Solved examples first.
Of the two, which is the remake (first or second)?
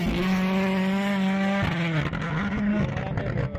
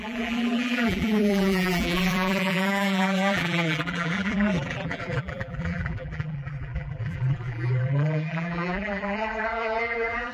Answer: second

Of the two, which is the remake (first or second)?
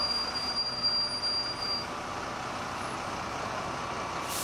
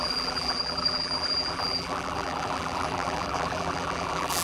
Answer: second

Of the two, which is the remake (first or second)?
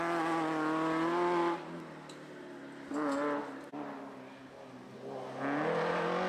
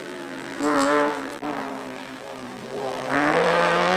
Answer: second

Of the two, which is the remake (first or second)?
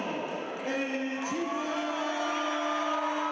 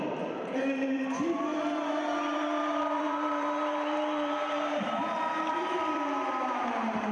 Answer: second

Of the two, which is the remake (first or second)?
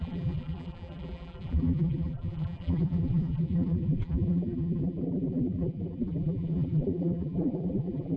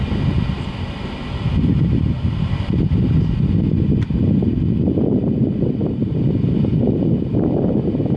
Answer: first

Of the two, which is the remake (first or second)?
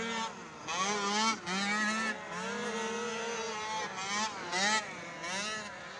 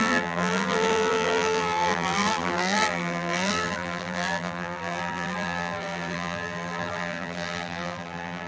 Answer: second